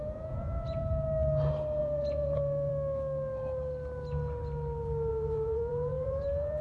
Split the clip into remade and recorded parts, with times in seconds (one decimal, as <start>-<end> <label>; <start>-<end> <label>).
0.0-0.8 remade; 0.8-1.8 recorded; 1.8-2.7 remade; 2.7-5.1 recorded; 5.1-6.6 remade